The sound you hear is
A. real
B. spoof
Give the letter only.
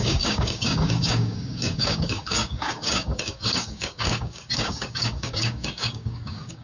B